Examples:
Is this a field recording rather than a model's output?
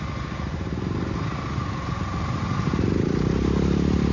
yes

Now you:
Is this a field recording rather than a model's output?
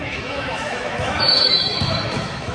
no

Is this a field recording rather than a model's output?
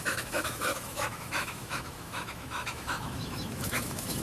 no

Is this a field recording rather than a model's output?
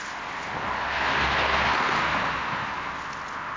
yes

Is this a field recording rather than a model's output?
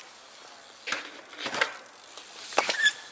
yes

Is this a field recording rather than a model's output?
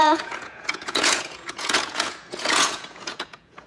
no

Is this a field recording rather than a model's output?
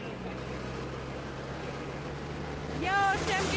yes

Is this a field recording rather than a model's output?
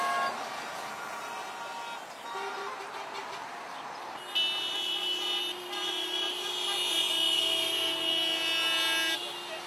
yes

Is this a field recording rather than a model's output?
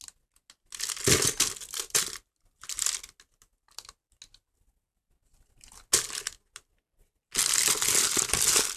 yes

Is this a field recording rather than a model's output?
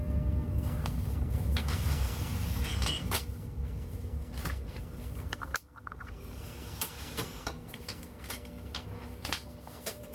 no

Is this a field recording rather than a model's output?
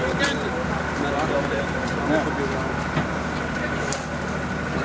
yes